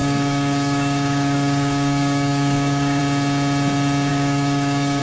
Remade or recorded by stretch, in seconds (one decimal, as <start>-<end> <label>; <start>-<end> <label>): 0.0-3.0 remade; 3.0-4.1 recorded; 4.1-5.0 remade